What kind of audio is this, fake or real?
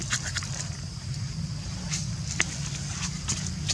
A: real